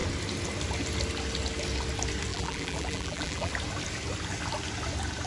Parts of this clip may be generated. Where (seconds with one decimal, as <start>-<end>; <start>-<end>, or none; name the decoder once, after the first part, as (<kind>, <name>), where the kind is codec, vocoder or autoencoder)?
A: 2.3-3.5 (vocoder, BigVGAN v2)